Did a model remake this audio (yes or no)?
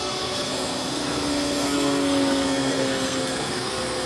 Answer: yes